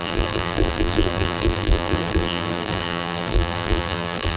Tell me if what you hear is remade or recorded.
remade